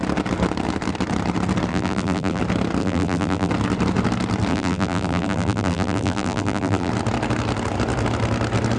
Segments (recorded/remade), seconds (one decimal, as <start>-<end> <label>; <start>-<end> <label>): 0.0-1.7 recorded; 1.7-2.4 remade; 2.4-2.8 recorded; 2.8-3.5 remade; 3.5-4.5 recorded; 4.5-6.9 remade; 6.9-8.8 recorded